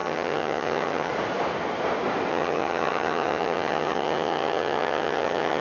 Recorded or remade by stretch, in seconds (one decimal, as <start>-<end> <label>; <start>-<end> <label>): 0.0-1.1 remade; 1.1-2.3 recorded; 2.3-5.6 remade

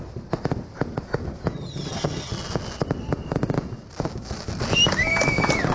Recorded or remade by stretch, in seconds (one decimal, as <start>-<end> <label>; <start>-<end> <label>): 0.0-1.5 recorded; 1.5-2.3 remade; 2.3-5.7 recorded

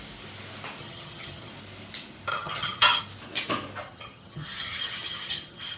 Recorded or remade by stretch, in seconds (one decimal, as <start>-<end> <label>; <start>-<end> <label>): 0.0-0.8 recorded; 0.8-1.5 remade; 1.5-2.3 recorded; 2.3-3.0 remade; 3.0-3.8 recorded; 3.8-5.8 remade

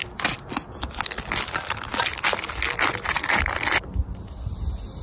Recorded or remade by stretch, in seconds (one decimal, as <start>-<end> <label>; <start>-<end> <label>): 0.0-5.0 recorded

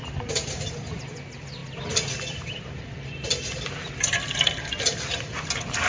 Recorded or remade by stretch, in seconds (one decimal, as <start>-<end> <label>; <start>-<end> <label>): 0.0-5.9 recorded